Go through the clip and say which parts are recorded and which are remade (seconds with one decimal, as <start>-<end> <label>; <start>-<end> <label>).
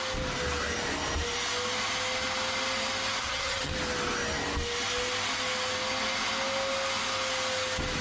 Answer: 0.0-3.2 recorded; 3.2-3.7 remade; 3.7-8.0 recorded